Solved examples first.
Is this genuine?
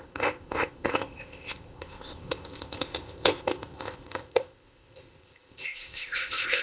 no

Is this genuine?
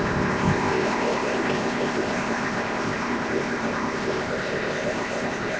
no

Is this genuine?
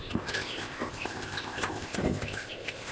no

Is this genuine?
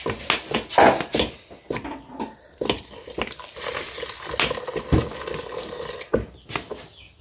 yes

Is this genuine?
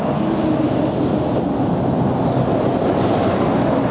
yes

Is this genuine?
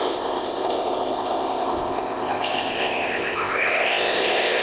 no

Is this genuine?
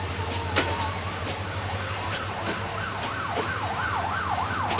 yes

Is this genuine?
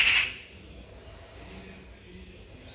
yes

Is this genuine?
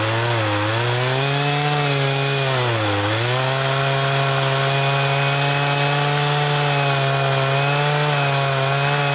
yes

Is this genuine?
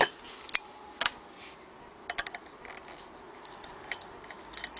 yes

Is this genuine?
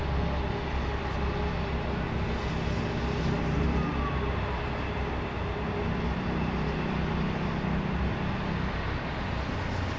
yes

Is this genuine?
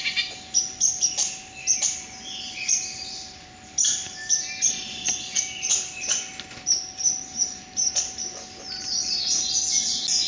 yes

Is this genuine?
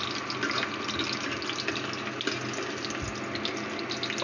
yes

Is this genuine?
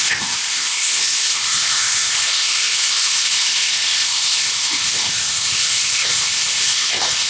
no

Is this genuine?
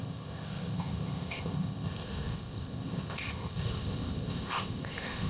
no